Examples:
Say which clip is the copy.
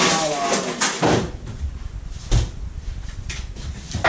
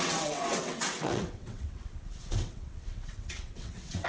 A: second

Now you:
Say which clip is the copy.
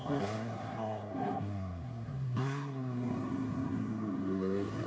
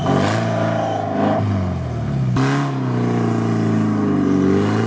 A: first